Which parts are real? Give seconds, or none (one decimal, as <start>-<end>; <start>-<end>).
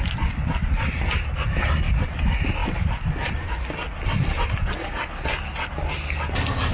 0.0-6.7